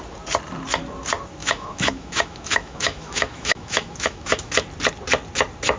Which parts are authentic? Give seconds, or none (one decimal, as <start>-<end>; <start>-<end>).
0.0-1.4; 4.5-5.8